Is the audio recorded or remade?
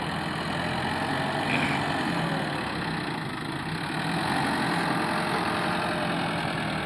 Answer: recorded